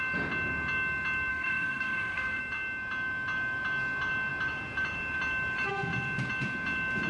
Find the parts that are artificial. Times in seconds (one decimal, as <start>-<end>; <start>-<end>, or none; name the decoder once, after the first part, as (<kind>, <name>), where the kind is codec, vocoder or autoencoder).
1.3-2.4 (codec, SNAC)